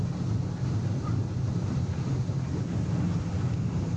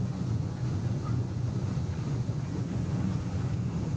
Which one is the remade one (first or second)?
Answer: second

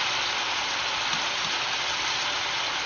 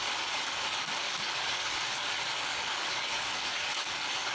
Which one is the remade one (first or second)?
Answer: second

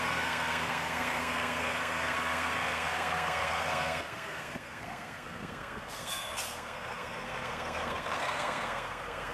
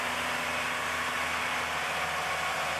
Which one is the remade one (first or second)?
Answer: first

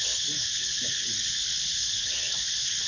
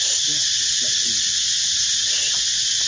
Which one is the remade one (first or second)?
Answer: first